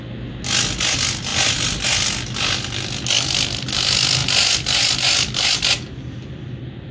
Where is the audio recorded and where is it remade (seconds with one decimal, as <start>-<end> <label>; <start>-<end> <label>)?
0.0-6.9 recorded